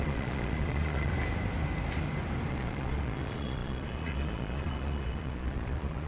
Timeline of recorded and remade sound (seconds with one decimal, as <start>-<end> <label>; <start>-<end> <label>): 0.0-1.1 remade; 1.1-2.5 recorded; 2.5-6.1 remade